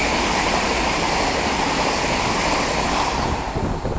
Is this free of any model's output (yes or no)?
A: yes